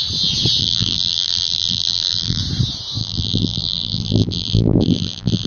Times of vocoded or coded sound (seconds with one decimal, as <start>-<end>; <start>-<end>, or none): 0.6-2.4; 3.0-5.5